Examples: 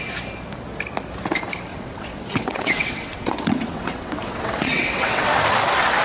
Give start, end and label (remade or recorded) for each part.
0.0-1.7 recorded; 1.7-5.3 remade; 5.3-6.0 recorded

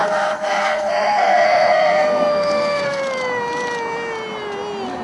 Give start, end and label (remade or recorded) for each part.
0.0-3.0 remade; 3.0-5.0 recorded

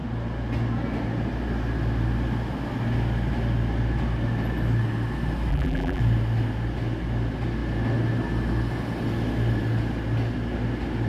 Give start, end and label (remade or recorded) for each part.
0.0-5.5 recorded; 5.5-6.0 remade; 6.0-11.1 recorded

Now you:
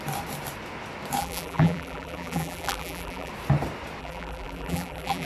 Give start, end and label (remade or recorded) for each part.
0.0-1.2 recorded; 1.2-3.3 remade; 3.3-4.0 recorded; 4.0-5.3 remade

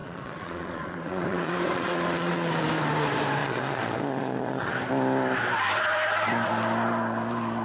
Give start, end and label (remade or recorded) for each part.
0.0-2.5 remade; 2.5-3.4 recorded; 3.4-4.7 remade; 4.7-7.6 recorded

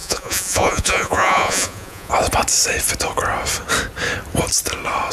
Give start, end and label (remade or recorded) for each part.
0.0-2.1 remade; 2.1-5.1 recorded

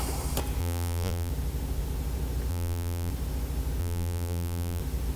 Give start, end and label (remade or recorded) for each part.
0.0-0.6 recorded; 0.6-1.3 remade; 1.3-2.5 recorded; 2.5-3.1 remade; 3.1-3.8 recorded; 3.8-4.8 remade; 4.8-5.2 recorded

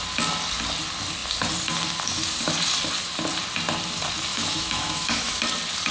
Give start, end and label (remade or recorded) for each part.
0.0-4.3 recorded; 4.3-5.4 remade; 5.4-5.9 recorded